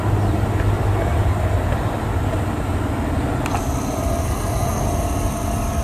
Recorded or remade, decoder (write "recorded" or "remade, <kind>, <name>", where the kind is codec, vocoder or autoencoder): recorded